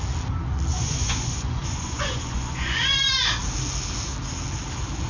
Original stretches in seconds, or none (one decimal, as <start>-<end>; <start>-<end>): 0.0-0.7; 2.8-5.1